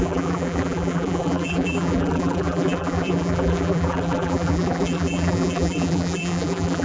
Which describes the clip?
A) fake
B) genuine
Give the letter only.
A